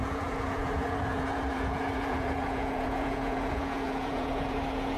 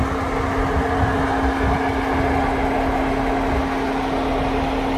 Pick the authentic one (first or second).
second